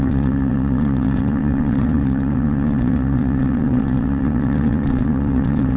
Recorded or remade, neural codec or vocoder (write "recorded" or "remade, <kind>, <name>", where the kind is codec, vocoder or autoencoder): remade, vocoder, WaveNeXt